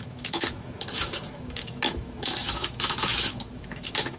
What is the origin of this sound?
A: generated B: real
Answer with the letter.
A